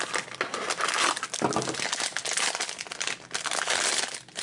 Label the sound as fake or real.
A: real